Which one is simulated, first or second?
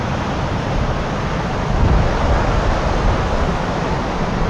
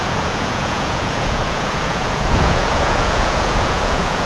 second